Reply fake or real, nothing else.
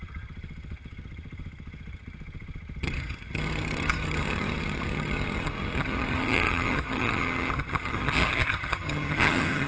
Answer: fake